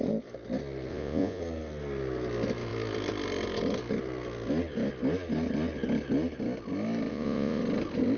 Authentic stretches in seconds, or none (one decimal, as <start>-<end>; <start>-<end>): 0.0-0.9; 1.4-7.1; 7.6-8.2